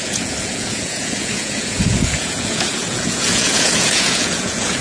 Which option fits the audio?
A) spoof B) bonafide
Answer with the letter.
A